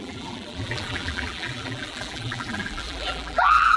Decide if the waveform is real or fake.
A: fake